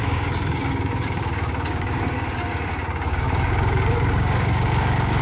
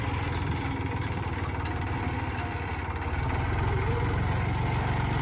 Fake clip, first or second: first